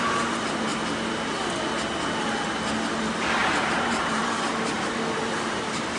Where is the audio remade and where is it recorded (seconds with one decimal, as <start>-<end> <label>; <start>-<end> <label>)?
0.0-0.7 remade; 0.7-3.0 recorded; 3.0-6.0 remade